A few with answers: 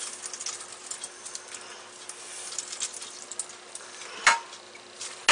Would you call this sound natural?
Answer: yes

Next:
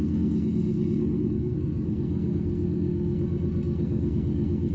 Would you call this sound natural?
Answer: no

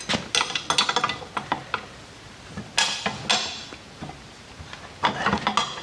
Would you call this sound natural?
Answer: yes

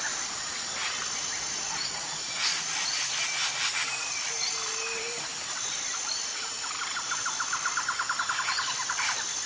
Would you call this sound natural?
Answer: no